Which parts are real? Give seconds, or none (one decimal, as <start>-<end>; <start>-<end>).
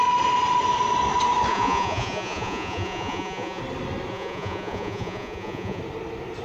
0.0-1.5; 3.6-4.1; 5.8-6.4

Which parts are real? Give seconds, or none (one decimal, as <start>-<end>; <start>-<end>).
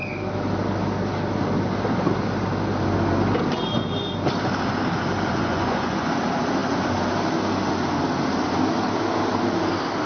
0.0-5.3; 6.1-10.1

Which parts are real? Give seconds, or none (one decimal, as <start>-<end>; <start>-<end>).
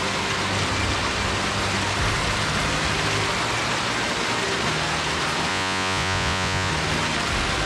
0.0-5.5; 6.7-7.7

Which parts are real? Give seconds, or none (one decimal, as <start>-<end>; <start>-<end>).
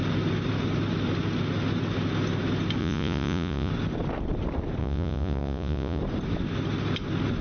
0.0-2.8; 3.7-4.8; 6.0-7.4